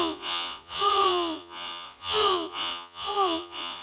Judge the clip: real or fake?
fake